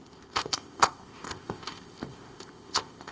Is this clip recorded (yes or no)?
no